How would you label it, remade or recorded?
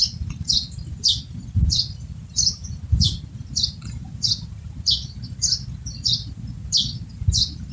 recorded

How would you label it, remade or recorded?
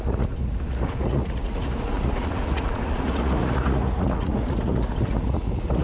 remade